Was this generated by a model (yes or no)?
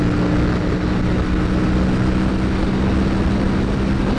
no